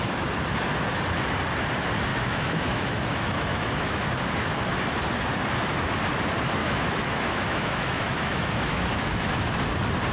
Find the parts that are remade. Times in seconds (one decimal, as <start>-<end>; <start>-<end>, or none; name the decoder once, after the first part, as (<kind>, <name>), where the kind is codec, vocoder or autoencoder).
2.1-4.1 (autoencoder, DAC-VAE); 6.6-9.6